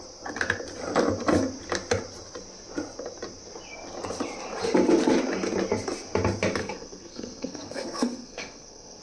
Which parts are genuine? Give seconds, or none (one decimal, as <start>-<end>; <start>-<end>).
0.0-6.6